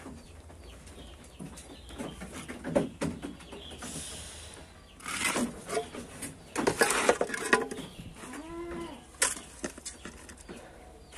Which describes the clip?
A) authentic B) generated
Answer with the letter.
A